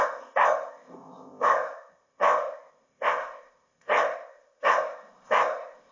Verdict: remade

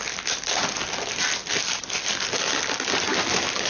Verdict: recorded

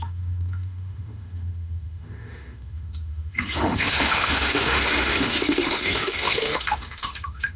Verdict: remade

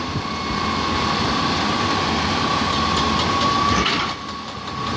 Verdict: recorded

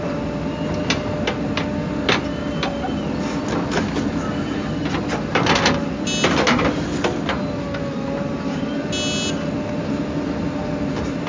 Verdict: recorded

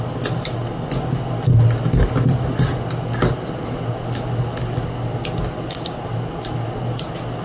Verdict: recorded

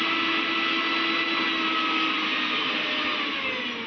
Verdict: recorded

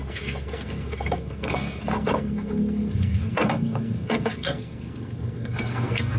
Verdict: remade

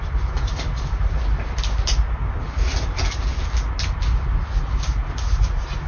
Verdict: recorded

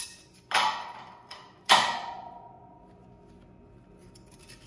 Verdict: remade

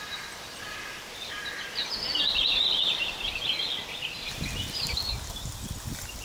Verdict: recorded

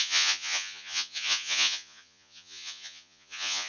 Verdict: remade